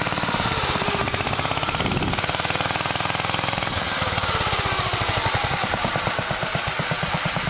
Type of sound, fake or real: fake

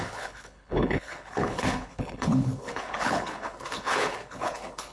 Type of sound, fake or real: fake